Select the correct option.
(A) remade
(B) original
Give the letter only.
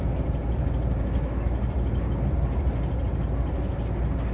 B